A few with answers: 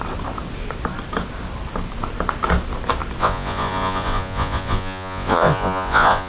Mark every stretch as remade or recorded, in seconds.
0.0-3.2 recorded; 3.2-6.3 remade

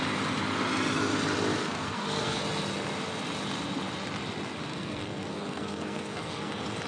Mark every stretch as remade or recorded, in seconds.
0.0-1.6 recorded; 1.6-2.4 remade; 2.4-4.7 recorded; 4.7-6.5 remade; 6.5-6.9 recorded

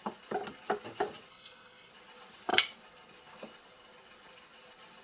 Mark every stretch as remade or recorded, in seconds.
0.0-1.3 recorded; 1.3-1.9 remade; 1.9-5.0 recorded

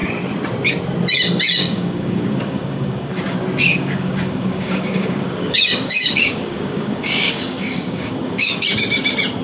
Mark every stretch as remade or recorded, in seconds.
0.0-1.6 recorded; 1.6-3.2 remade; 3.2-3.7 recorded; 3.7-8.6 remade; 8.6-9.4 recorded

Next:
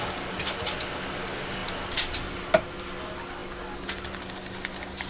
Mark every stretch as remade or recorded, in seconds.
0.0-5.1 recorded